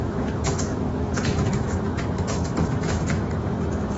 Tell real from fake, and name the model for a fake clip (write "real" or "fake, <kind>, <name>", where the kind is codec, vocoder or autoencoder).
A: fake, autoencoder, DAC-VAE